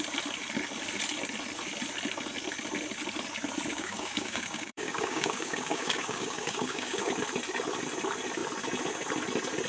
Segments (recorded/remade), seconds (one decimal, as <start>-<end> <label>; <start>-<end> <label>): 0.0-3.7 recorded; 3.7-7.1 remade; 7.1-9.7 recorded

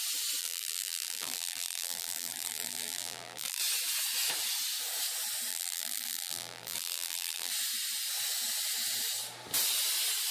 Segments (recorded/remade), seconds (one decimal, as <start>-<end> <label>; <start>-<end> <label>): 0.0-0.4 recorded; 0.4-3.6 remade; 3.6-5.5 recorded; 5.5-7.5 remade; 7.5-10.3 recorded

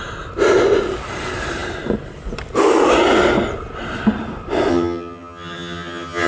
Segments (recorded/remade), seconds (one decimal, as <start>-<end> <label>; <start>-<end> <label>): 0.0-4.7 recorded; 4.7-6.3 remade

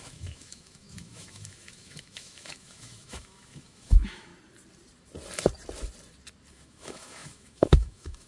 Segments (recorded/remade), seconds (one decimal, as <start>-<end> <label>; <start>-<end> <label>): 0.0-4.3 remade; 4.3-6.5 recorded; 6.5-8.3 remade

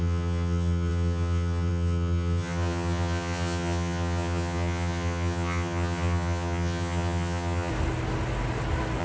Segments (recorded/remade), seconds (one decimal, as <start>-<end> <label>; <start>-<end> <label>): 0.0-7.7 remade; 7.7-9.0 recorded

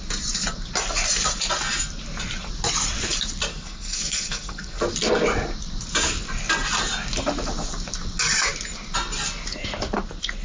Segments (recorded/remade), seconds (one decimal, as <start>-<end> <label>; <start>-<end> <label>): 0.0-3.5 recorded; 3.5-4.8 remade; 4.8-10.4 recorded

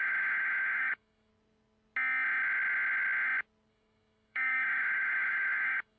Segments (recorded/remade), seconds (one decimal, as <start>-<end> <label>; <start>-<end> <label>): 0.0-1.3 remade; 1.3-3.7 recorded; 3.7-6.0 remade